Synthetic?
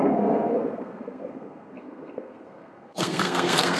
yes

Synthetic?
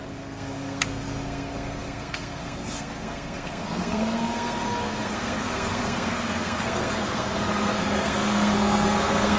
yes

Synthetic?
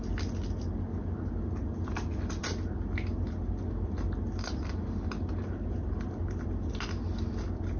no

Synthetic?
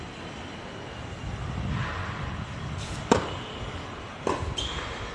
no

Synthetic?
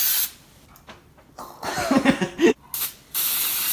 no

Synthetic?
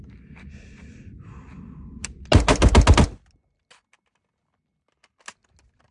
no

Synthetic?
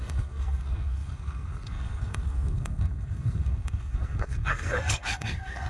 yes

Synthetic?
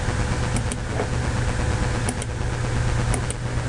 no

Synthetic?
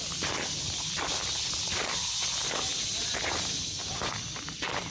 no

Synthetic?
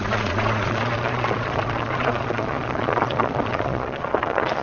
yes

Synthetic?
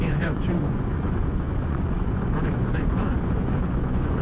yes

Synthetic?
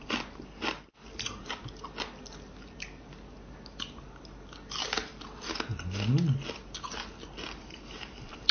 no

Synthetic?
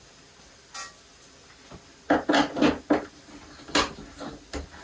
no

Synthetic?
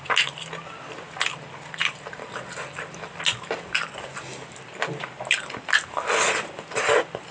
no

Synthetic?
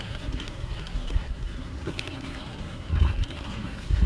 yes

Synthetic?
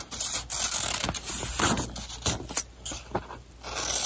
no